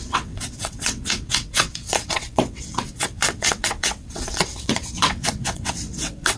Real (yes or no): no